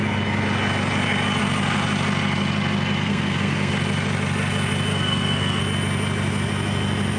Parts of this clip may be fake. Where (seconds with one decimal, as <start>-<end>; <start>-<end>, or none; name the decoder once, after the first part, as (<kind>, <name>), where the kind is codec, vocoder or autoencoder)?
3.0-3.7 (codec, SNAC); 4.9-5.6